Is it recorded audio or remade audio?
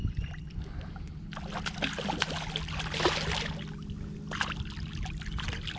recorded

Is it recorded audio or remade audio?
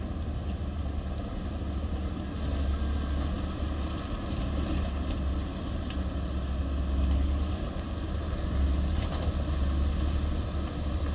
recorded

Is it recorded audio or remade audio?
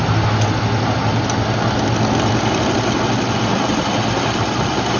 recorded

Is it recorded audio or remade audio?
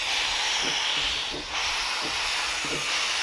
recorded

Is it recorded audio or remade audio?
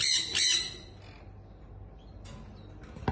recorded